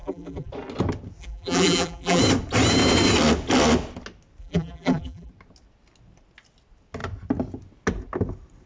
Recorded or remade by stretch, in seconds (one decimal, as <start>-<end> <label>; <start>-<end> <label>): 0.0-0.5 remade; 0.5-1.2 recorded; 1.2-2.2 remade; 2.2-4.4 recorded; 4.4-5.3 remade; 5.3-8.7 recorded